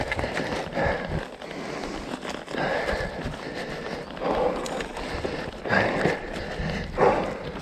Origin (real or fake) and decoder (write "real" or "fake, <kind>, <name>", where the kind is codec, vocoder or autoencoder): real